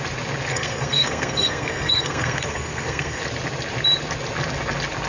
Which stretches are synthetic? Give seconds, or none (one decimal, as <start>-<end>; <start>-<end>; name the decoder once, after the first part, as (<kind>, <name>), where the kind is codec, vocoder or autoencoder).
0.5-3.2 (codec, SNAC)